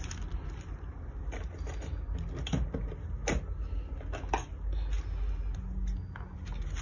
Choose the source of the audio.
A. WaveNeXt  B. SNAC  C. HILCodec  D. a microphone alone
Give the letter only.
D